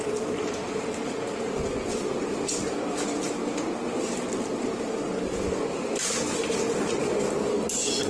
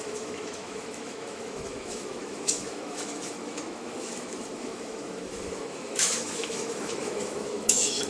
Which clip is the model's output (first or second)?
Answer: second